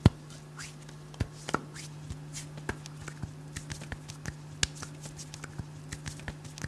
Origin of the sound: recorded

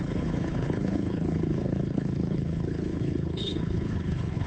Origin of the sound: remade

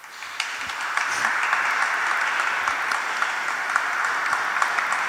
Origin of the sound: recorded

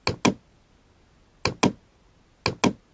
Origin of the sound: recorded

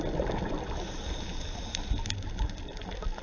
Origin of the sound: recorded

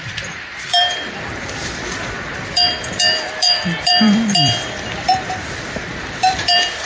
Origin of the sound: remade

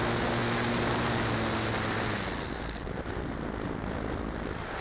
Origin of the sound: recorded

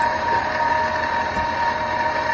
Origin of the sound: recorded